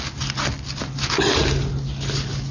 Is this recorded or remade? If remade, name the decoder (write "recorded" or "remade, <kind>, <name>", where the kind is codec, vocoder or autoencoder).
recorded